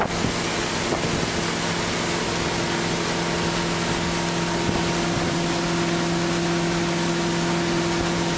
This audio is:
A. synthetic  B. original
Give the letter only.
B